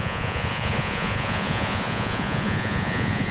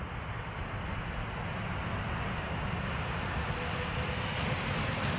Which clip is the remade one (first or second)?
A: first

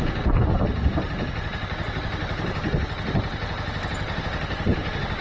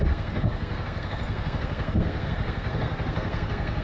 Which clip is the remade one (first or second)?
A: second